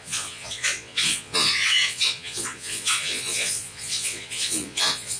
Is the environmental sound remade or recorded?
remade